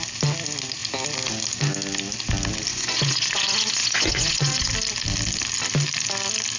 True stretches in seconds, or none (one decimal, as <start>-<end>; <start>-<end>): 0.0-2.7; 4.7-6.6